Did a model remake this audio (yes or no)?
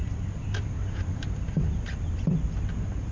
no